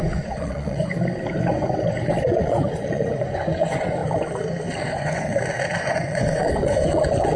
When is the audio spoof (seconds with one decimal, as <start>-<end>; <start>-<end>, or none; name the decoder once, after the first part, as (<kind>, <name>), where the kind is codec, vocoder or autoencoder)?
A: 0.0-0.9 (vocoder, Vocos); 2.2-4.0; 4.8-5.3; 5.8-7.4